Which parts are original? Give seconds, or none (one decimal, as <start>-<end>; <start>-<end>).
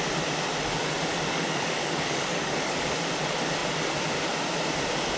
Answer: 0.0-1.1; 3.0-5.2